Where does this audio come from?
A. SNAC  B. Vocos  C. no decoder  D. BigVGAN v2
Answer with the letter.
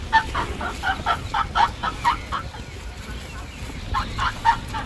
C